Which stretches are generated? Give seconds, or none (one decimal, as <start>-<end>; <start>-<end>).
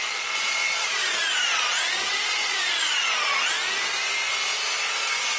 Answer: 0.0-3.3; 5.0-5.4